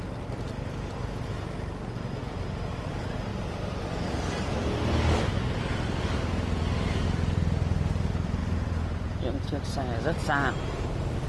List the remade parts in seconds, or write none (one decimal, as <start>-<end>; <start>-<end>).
none

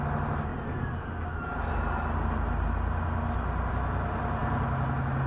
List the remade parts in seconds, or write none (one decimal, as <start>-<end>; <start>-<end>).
none

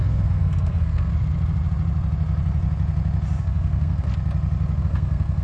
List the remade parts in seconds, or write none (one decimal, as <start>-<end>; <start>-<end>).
0.0-1.1; 3.4-4.1; 4.8-5.4

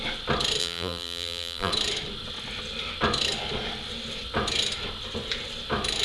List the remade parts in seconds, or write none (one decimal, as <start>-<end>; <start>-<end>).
0.6-1.7

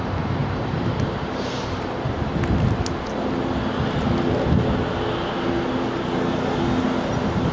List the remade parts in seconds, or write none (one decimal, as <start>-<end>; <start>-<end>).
0.4-1.6

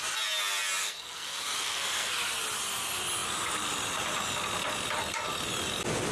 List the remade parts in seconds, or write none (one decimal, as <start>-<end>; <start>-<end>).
0.8-2.1

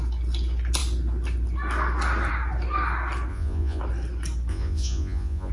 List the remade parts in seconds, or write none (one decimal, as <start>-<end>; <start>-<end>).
3.3-3.8; 4.5-5.5